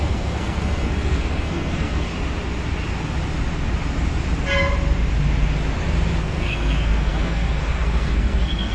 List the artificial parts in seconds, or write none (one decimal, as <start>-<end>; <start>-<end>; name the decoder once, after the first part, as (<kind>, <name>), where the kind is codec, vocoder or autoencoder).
0.0-2.1 (codec, SNAC); 6.2-8.7